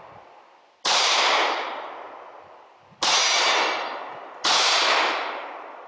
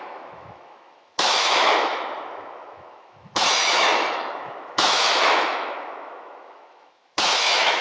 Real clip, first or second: first